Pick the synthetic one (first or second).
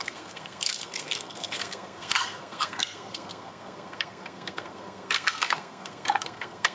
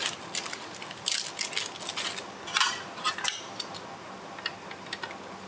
first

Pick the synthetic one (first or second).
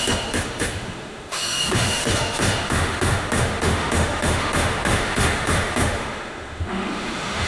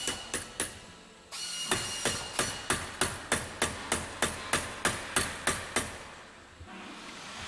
first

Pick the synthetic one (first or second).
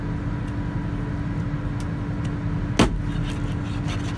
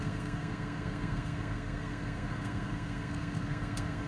second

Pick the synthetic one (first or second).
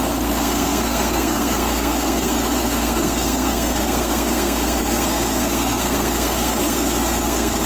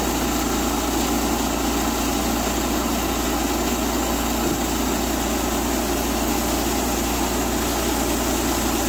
first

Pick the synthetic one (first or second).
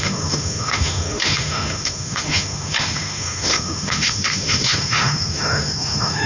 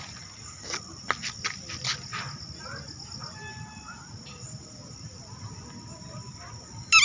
first